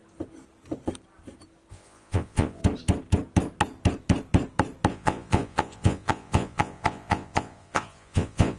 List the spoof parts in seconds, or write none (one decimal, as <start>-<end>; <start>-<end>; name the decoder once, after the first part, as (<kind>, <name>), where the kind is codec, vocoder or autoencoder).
1.7-2.6 (vocoder, Vocos); 4.9-8.6